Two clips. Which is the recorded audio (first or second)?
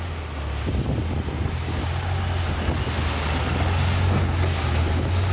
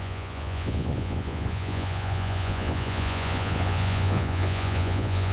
first